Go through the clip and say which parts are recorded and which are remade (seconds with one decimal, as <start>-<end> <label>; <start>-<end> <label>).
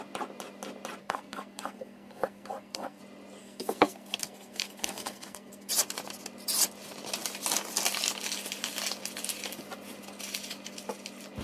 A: 0.0-1.0 recorded; 1.0-3.0 remade; 3.0-3.4 recorded; 3.4-5.7 remade; 5.7-11.4 recorded